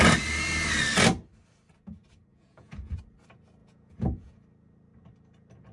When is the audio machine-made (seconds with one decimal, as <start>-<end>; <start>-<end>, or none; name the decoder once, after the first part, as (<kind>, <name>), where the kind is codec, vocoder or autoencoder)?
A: 2.3-3.0 (vocoder, Vocos); 3.6-4.3